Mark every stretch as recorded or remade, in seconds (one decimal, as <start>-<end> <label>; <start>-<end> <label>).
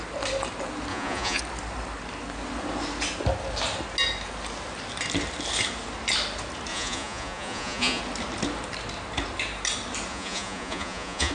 0.0-0.9 recorded; 0.9-1.4 remade; 1.4-6.7 recorded; 6.7-8.0 remade; 8.0-10.1 recorded; 10.1-11.3 remade